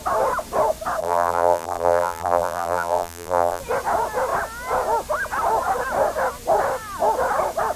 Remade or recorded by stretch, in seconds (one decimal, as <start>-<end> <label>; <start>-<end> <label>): 0.0-1.0 recorded; 1.0-3.6 remade; 3.6-7.8 recorded